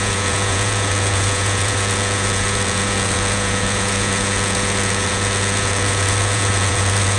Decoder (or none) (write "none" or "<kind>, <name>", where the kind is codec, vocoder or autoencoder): vocoder, Vocos